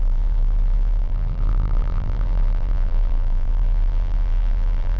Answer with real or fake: fake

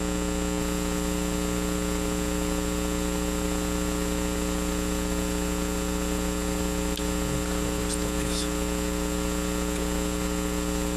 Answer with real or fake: real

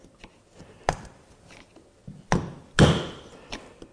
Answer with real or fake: real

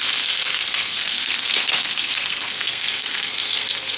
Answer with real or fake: fake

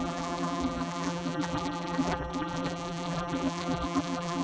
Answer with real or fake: fake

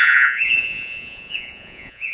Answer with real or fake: fake